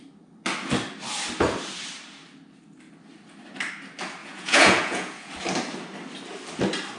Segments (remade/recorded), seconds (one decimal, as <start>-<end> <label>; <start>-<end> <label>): 0.0-4.2 recorded; 4.2-5.3 remade; 5.3-7.0 recorded